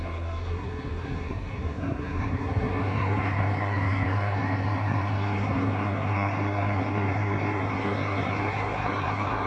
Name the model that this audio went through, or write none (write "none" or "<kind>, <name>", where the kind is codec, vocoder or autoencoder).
codec, SNAC